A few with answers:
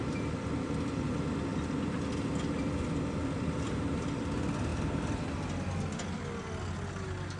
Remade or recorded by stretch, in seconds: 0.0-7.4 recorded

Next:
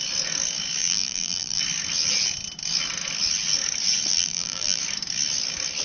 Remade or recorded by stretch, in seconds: 0.0-0.8 recorded; 0.8-1.6 remade; 1.6-4.1 recorded; 4.1-4.8 remade; 4.8-5.8 recorded

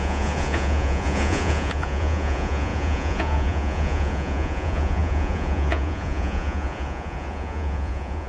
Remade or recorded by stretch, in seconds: 0.0-8.3 remade

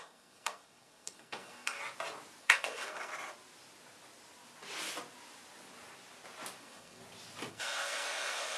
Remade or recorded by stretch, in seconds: 0.0-1.8 remade; 1.8-2.4 recorded; 2.4-3.1 remade; 3.1-6.6 recorded; 6.6-7.0 remade; 7.0-7.5 recorded; 7.5-8.6 remade

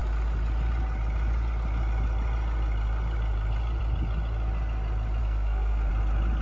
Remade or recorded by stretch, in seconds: 0.0-5.2 recorded; 5.2-5.9 remade; 5.9-6.4 recorded

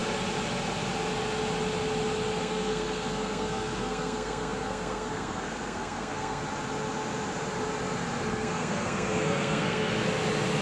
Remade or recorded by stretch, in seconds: 0.0-2.4 recorded; 2.4-6.4 remade; 6.4-8.3 recorded; 8.3-9.9 remade; 9.9-10.6 recorded

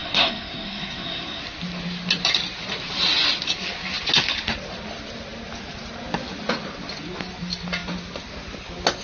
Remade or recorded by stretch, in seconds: 0.0-1.4 remade; 1.4-9.0 recorded